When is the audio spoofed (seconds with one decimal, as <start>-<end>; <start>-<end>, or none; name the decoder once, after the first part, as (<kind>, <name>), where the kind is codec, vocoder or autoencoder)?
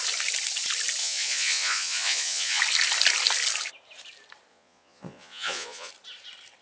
1.0-2.6 (vocoder, Vocos); 4.5-5.9